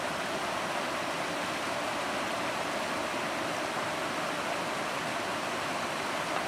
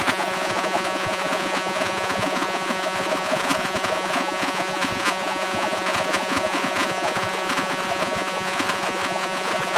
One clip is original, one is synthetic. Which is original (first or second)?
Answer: first